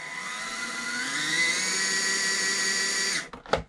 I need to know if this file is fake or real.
real